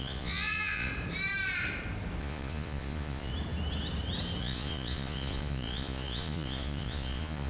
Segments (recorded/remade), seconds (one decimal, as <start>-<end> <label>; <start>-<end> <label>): 0.0-0.9 remade; 0.9-2.2 recorded; 2.2-3.3 remade; 3.3-4.4 recorded; 4.4-7.5 remade